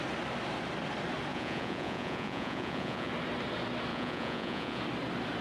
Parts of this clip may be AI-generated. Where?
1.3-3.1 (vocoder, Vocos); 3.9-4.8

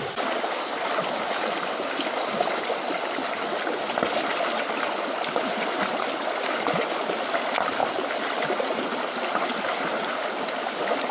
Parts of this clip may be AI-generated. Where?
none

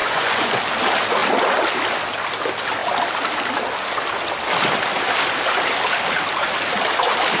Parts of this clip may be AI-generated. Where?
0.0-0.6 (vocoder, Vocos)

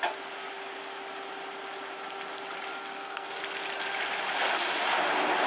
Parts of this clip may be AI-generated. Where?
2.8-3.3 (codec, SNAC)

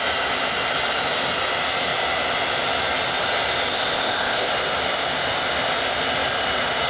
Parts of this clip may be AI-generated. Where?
3.7-4.5 (codec, ZipCodec)

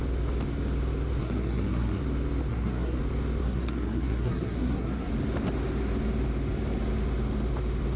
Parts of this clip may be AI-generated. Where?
1.2-2.0 (codec, SNAC); 2.5-3.0; 3.4-5.1